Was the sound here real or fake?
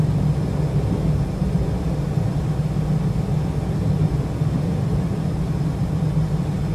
real